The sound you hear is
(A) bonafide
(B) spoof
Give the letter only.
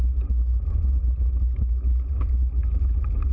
A